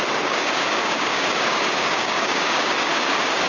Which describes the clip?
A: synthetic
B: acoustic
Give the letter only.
A